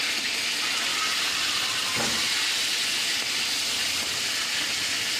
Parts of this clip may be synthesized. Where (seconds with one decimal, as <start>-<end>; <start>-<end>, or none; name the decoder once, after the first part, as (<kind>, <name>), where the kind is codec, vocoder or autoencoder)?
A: none